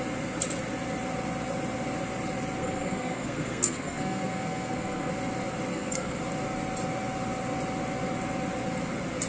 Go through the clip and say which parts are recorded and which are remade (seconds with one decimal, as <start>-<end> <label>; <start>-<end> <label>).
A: 0.0-2.6 recorded; 2.6-5.1 remade; 5.1-5.7 recorded; 5.7-6.2 remade; 6.2-9.3 recorded